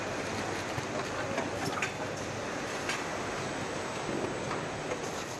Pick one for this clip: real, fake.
real